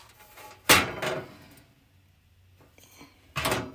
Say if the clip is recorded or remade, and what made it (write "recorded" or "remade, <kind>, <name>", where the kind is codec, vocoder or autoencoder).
recorded